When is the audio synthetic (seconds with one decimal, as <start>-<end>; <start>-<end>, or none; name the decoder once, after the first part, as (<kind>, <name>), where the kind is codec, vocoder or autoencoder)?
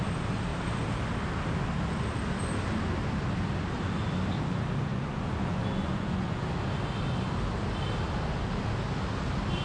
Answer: 4.9-6.4 (vocoder, Vocos)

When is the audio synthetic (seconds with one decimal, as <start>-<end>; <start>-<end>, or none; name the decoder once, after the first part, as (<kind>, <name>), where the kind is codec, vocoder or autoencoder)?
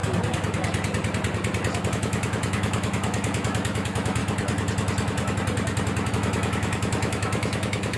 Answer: 1.9-4.2 (autoencoder, DAC-VAE); 6.1-8.0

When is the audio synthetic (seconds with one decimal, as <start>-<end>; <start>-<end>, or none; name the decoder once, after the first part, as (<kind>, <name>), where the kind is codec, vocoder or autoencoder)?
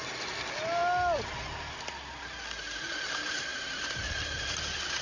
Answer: none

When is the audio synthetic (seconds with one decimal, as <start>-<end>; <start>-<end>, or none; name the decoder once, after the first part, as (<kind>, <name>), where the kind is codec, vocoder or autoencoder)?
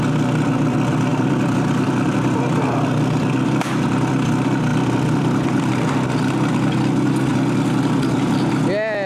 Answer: 1.1-4.1 (vocoder, BigVGAN v2); 4.7-6.3; 7.3-8.5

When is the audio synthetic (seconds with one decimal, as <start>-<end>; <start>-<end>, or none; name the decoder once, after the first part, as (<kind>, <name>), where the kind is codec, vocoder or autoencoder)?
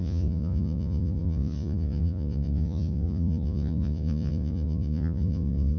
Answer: 0.0-5.8 (vocoder, Vocos)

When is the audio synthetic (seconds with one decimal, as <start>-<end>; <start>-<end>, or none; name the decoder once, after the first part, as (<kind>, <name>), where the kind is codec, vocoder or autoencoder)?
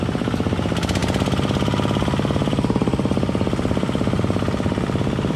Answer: none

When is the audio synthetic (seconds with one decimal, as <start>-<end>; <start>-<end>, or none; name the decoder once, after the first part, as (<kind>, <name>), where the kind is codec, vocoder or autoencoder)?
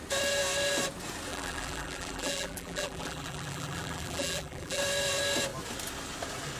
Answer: 1.3-4.8 (vocoder, BigVGAN v2)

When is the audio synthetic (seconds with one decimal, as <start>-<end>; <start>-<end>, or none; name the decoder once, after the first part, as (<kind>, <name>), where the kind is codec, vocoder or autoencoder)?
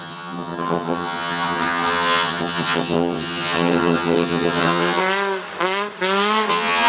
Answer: 0.0-5.0 (vocoder, HiFi-GAN); 6.5-6.9